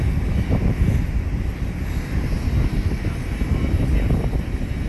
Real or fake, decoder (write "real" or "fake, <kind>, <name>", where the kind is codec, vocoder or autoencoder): real